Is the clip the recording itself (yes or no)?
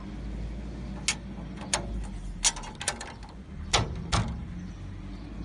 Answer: yes